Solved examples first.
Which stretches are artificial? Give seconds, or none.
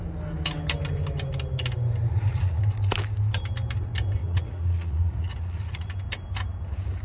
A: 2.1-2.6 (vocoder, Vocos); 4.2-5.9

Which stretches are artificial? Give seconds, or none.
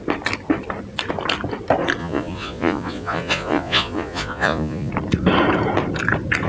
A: 2.0-4.9 (vocoder, Vocos)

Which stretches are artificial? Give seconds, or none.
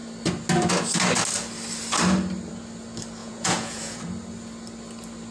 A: 3.2-4.0 (vocoder, Vocos)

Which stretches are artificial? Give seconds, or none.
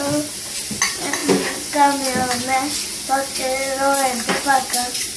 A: none